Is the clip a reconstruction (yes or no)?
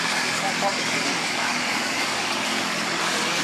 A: yes